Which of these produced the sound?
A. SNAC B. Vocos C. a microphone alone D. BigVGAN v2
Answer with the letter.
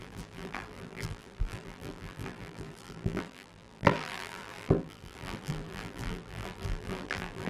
D